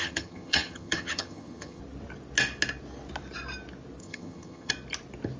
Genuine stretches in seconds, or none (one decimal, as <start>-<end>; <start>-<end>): 1.8-4.0; 4.7-5.4